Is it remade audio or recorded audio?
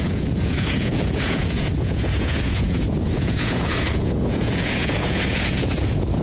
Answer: remade